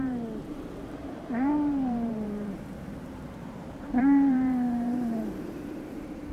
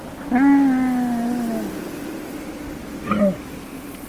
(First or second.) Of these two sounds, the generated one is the first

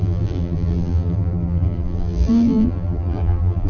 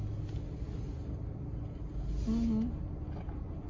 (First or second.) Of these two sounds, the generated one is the first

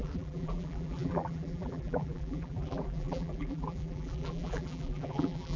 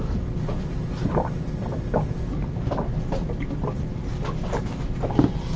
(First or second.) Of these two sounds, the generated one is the first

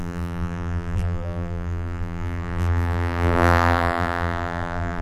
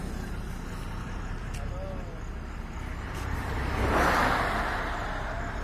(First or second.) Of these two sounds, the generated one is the first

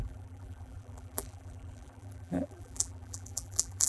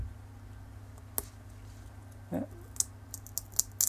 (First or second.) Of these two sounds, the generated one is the first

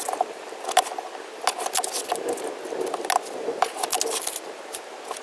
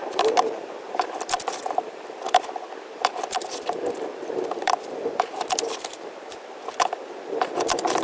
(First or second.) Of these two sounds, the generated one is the second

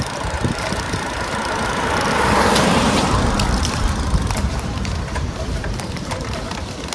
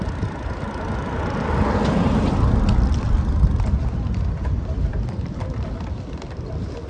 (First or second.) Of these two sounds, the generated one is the first